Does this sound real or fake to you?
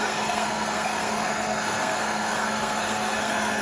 fake